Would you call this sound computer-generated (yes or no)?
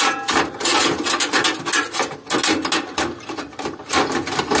no